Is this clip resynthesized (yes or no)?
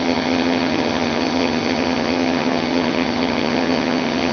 yes